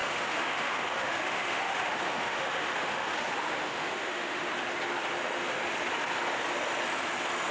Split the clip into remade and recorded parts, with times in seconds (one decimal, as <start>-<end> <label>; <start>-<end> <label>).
0.0-4.5 remade; 4.5-7.5 recorded